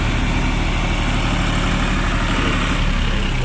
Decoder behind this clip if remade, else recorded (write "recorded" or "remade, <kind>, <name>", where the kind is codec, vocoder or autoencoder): recorded